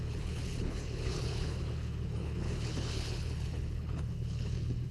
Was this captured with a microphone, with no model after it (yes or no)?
no